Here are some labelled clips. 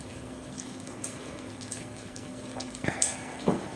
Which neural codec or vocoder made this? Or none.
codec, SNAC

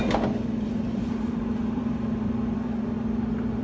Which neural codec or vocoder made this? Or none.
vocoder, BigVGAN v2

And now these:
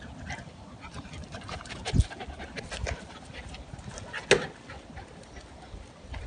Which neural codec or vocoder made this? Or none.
none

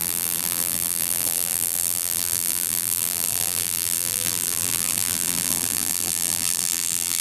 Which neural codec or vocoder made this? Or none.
vocoder, BigVGAN v2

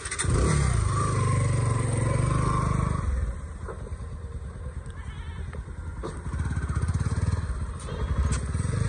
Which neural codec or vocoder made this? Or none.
none